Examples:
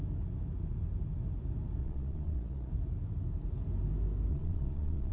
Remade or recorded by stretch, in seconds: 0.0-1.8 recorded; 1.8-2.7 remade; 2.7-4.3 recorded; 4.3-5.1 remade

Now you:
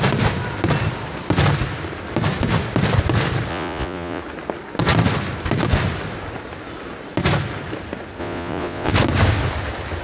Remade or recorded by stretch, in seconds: 0.0-3.5 recorded; 3.5-4.2 remade; 4.2-8.2 recorded; 8.2-8.9 remade; 8.9-10.0 recorded

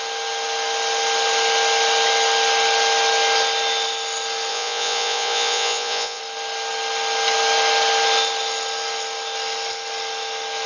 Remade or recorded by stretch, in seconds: 0.0-4.5 recorded; 4.5-6.2 remade; 6.2-10.7 recorded

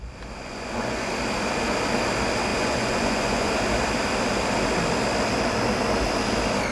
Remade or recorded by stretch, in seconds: 0.0-0.4 recorded; 0.4-1.1 remade; 1.1-2.5 recorded; 2.5-3.5 remade; 3.5-6.7 recorded

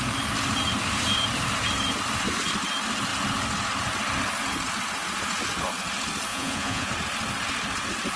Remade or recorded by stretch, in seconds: 0.0-6.3 recorded; 6.3-6.9 remade; 6.9-8.2 recorded